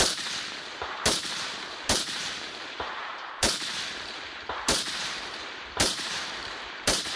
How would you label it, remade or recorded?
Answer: remade